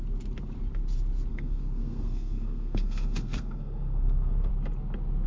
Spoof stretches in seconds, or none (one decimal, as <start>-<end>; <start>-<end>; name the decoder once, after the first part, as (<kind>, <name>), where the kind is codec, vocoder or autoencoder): 1.3-4.5 (codec, SNAC)

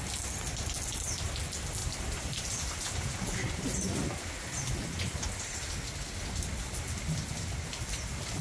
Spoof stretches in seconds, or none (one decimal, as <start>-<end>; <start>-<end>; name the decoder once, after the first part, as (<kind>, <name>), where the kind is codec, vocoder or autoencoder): 1.8-2.5 (vocoder, BigVGAN v2)

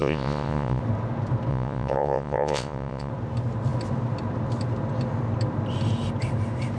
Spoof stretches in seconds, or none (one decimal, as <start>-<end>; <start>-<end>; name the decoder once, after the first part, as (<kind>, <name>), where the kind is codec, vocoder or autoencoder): 0.0-0.8 (vocoder, Vocos); 1.5-3.1

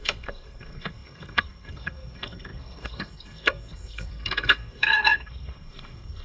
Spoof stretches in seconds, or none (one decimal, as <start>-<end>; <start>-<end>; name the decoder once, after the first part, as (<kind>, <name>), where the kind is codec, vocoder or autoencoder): 0.0-6.2 (codec, SNAC)

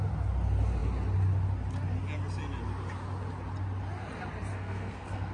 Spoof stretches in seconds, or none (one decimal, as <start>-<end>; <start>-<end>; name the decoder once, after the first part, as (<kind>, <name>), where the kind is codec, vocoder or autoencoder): 4.5-5.3 (codec, SNAC)

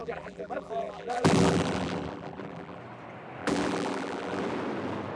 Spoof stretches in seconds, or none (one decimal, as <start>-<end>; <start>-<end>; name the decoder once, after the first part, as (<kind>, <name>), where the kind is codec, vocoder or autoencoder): 0.0-2.8 (vocoder, BigVGAN v2); 3.4-4.4

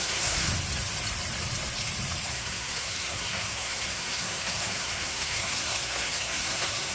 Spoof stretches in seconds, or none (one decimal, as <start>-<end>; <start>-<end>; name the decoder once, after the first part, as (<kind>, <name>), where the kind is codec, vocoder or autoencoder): 0.0-0.5 (codec, SNAC); 2.3-6.9